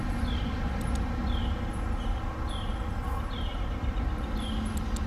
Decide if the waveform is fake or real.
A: real